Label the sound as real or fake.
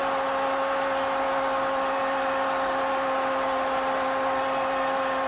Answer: real